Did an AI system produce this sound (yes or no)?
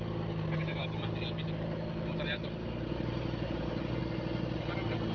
no